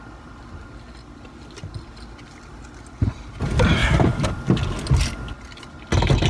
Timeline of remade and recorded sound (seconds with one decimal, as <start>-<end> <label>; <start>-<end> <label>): 0.0-3.8 recorded; 3.8-4.9 remade; 4.9-6.3 recorded

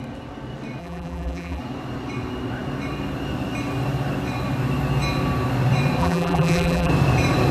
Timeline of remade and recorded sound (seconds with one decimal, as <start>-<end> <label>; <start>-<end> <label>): 0.0-0.8 recorded; 0.8-1.6 remade; 1.6-6.0 recorded; 6.0-6.9 remade; 6.9-7.5 recorded

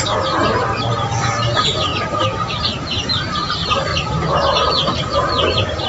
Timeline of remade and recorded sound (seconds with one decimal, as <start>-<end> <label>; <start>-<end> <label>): 0.0-3.9 remade; 3.9-4.7 recorded; 4.7-5.9 remade

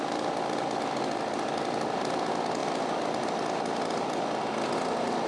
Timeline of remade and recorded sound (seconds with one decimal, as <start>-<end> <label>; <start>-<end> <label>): 0.0-5.3 recorded